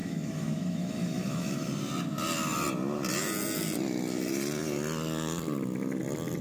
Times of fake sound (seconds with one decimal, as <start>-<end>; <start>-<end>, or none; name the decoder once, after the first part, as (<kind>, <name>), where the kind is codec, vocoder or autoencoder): 0.0-1.7 (autoencoder, DAC-VAE)